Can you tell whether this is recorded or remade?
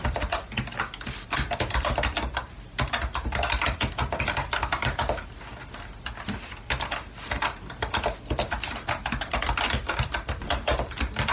recorded